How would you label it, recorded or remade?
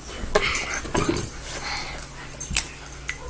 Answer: recorded